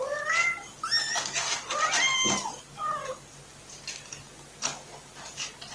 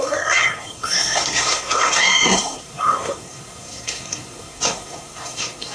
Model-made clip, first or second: second